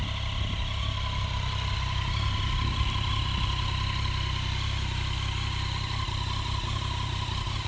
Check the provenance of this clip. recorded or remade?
recorded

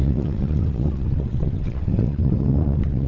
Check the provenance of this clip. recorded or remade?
remade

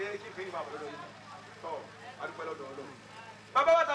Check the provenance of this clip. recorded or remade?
recorded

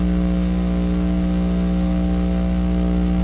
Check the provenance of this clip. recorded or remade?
recorded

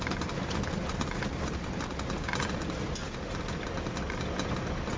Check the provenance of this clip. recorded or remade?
recorded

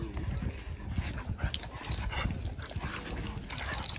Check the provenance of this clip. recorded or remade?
recorded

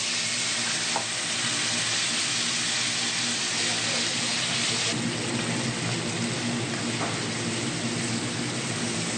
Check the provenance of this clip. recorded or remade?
recorded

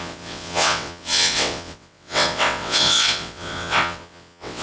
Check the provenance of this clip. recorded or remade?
remade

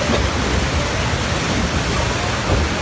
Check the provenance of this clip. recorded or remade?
recorded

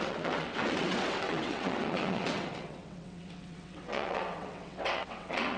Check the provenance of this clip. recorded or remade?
remade